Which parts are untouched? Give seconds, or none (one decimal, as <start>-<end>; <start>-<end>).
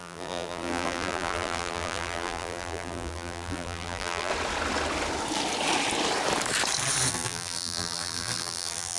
4.3-7.1